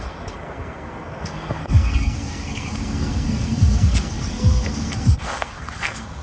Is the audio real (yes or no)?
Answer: no